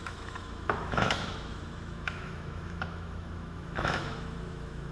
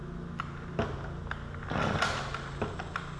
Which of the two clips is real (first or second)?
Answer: second